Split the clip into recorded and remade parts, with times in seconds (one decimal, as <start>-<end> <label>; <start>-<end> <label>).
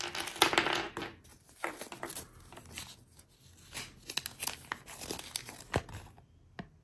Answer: 0.0-6.8 recorded